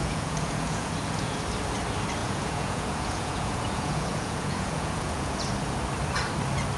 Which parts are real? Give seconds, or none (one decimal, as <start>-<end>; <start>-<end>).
1.4-2.2; 5.4-6.8